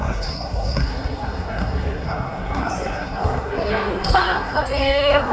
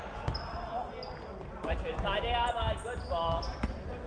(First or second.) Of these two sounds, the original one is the second